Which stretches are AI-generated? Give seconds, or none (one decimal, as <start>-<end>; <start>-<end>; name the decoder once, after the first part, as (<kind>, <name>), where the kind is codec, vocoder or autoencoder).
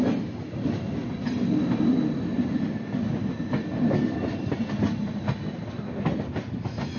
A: none